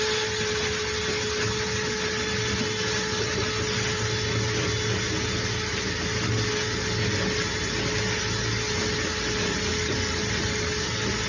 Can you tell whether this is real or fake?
real